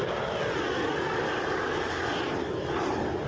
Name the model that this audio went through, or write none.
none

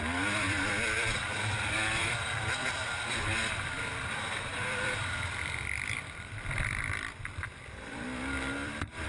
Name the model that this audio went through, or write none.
vocoder, BigVGAN v2